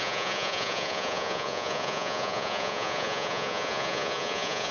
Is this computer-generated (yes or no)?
yes